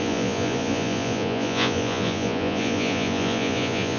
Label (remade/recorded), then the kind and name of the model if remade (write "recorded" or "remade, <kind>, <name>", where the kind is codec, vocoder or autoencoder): remade, vocoder, Vocos